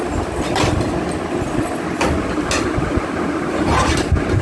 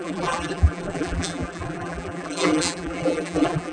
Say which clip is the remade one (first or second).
second